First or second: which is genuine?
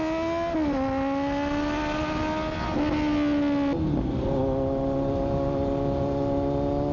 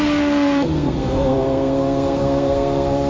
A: first